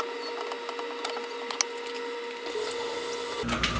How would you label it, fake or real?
real